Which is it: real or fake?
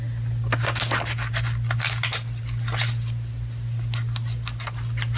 real